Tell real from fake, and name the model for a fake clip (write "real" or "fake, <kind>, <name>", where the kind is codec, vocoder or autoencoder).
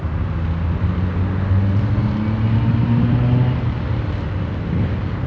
real